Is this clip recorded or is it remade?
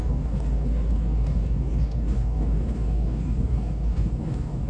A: remade